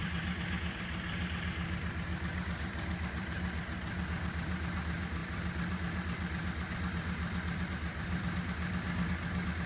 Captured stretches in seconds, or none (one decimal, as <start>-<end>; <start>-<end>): none